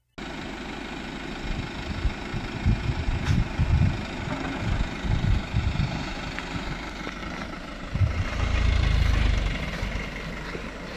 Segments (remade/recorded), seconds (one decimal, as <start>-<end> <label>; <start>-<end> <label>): 0.0-7.2 recorded; 7.2-9.6 remade; 9.6-11.0 recorded